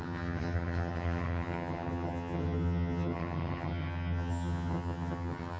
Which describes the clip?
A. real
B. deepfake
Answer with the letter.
B